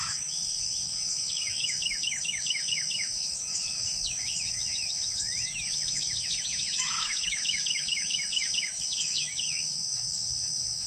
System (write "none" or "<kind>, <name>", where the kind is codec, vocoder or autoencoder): autoencoder, DAC-VAE